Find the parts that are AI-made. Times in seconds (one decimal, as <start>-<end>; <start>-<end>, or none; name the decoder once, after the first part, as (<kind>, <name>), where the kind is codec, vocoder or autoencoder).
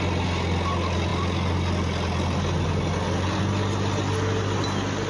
none